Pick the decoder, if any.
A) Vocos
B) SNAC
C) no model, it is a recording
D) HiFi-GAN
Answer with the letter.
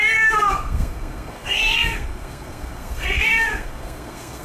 B